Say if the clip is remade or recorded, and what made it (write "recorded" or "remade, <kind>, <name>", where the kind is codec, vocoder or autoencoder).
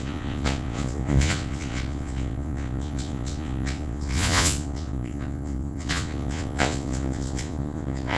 remade, vocoder, Vocos